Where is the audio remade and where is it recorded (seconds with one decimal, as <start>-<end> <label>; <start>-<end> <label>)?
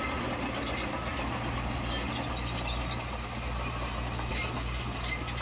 0.0-5.4 recorded